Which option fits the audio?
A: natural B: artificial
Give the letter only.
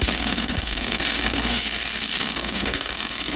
B